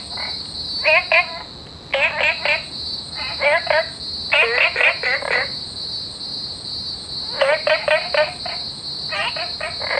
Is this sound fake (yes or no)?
no